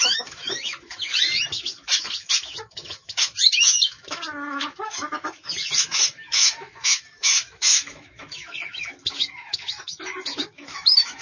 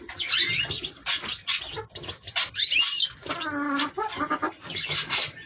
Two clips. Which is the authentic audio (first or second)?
second